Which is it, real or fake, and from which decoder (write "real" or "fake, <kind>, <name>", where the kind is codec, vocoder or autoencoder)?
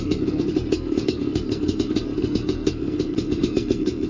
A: fake, codec, SNAC